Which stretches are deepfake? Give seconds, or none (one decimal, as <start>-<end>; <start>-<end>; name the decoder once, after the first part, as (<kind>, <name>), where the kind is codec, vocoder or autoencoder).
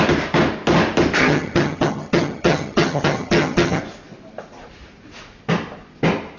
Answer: 1.2-3.8 (vocoder, HiFi-GAN)